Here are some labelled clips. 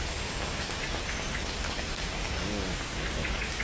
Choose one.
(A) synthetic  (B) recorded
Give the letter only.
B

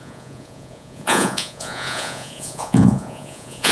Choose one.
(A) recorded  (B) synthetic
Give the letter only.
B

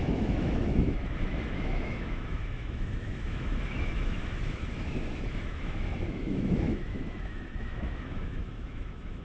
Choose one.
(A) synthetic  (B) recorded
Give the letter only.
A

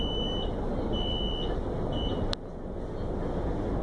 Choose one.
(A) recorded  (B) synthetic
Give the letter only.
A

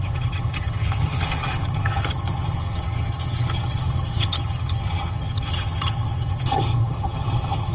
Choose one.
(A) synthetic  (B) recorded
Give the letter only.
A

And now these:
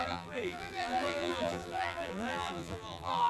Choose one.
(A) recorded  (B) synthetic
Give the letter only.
B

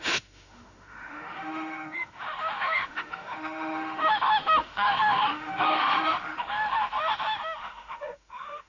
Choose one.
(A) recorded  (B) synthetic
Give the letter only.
B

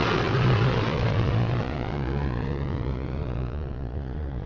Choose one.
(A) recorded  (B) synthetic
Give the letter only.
B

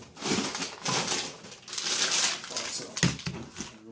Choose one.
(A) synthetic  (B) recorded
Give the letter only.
B